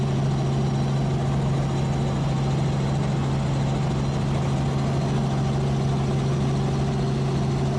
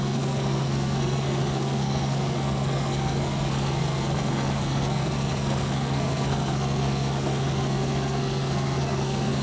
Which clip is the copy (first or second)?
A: second